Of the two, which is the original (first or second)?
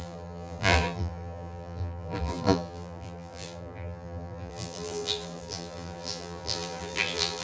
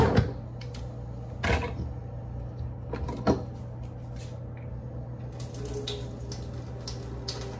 second